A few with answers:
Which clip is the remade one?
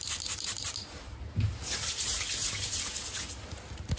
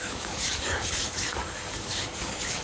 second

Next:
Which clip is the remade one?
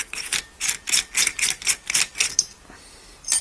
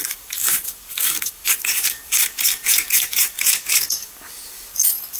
second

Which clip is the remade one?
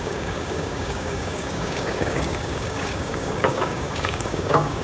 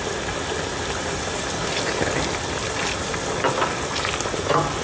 first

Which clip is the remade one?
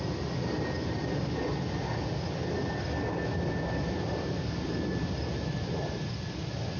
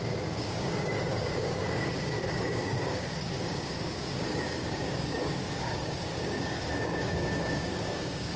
second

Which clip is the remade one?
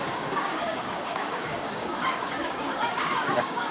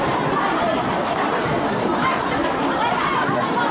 first